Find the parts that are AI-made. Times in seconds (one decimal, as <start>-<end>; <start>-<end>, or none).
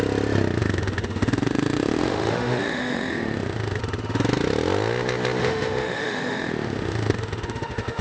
0.6-3.8; 5.4-8.0